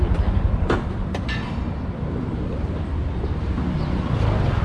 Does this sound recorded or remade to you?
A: recorded